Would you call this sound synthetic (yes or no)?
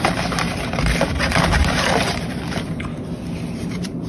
yes